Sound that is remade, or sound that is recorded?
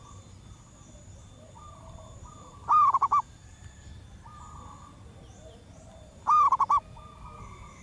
remade